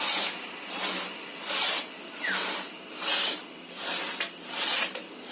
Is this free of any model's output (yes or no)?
yes